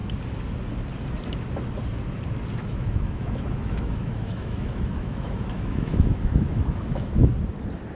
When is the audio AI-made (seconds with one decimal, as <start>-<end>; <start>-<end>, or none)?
2.6-7.3